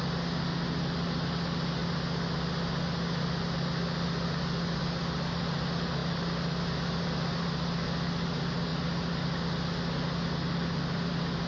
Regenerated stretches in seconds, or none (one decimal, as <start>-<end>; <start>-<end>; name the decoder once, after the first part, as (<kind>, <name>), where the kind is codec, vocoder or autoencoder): none